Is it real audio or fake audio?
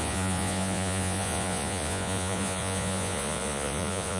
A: fake